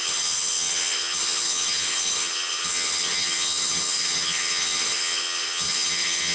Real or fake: fake